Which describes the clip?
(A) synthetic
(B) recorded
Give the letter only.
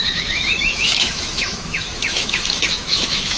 A